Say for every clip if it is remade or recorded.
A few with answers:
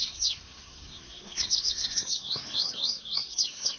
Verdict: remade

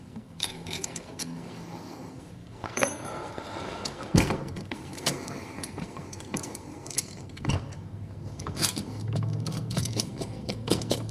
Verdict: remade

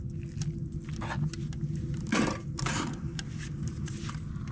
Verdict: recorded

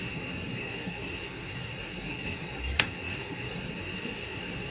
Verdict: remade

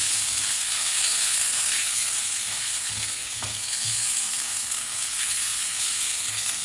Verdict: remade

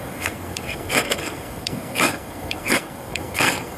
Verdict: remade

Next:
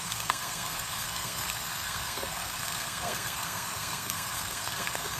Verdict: remade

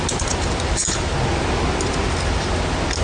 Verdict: recorded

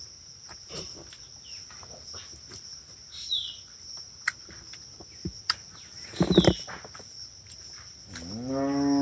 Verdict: recorded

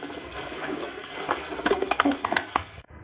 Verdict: remade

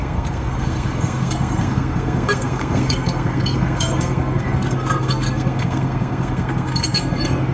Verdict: remade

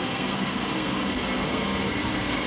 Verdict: remade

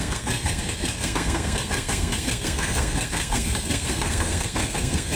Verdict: remade